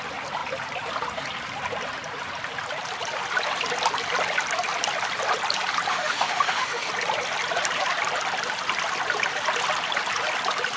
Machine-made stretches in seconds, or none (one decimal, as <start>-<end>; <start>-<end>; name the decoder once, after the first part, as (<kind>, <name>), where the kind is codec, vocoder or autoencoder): 5.9-6.9 (autoencoder, DAC-VAE)